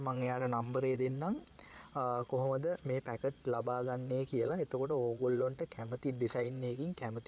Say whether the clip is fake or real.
fake